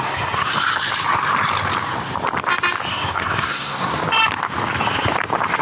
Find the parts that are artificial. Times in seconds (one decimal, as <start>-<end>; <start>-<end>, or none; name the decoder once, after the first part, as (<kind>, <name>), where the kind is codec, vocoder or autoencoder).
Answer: 0.0-0.5 (codec, SNAC); 2.9-3.9